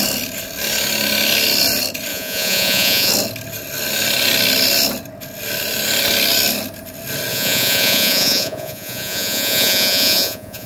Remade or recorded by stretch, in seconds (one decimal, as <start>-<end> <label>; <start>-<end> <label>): 0.0-2.1 recorded; 2.1-3.1 remade; 3.1-7.3 recorded; 7.3-10.7 remade